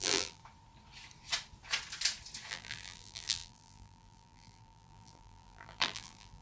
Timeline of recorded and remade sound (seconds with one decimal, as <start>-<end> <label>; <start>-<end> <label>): 0.0-0.4 remade; 0.4-2.5 recorded; 2.5-6.4 remade